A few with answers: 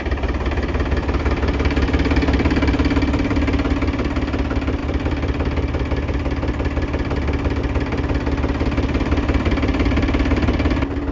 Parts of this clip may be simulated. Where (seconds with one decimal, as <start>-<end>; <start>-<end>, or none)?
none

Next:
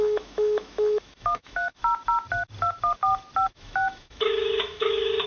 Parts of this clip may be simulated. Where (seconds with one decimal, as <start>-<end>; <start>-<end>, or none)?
0.0-1.8; 3.5-5.3

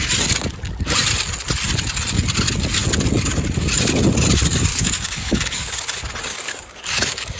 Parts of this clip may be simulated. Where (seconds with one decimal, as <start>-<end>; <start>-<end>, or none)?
4.7-5.8; 6.3-7.4

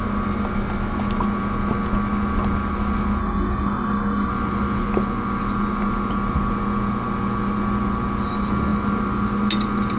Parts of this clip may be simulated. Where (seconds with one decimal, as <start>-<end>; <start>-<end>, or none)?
3.2-4.3

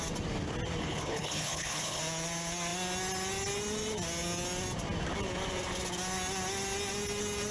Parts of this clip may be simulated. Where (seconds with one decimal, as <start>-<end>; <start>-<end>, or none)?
0.8-2.0

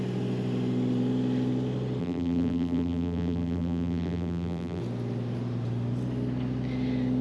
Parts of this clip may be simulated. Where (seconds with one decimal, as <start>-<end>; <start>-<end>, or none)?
2.0-4.8

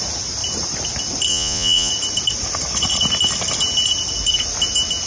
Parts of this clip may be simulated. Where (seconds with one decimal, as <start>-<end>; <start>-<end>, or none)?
1.3-1.9

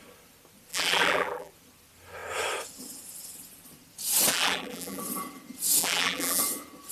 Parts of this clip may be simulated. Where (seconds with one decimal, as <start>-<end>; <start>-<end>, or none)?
0.7-1.5; 4.3-5.0; 5.8-6.4